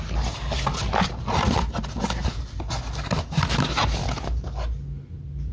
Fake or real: real